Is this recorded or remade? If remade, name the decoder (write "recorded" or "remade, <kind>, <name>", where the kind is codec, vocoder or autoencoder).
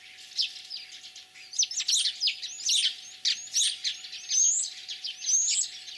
recorded